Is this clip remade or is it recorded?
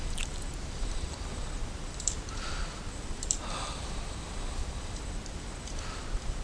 remade